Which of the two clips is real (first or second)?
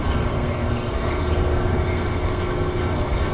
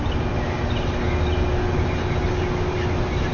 second